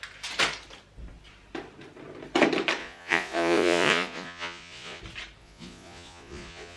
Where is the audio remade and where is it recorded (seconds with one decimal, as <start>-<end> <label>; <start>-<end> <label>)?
0.0-2.8 recorded; 2.8-5.0 remade; 5.0-5.4 recorded; 5.4-6.8 remade